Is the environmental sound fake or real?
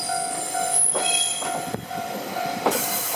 fake